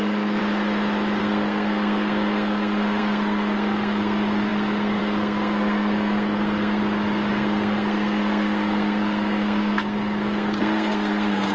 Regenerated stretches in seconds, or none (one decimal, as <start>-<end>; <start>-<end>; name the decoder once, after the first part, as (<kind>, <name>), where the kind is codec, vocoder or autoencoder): 0.0-0.4 (codec, SNAC); 1.2-6.8; 7.3-11.5